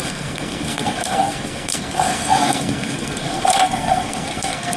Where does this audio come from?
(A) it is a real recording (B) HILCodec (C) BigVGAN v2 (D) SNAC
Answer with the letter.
D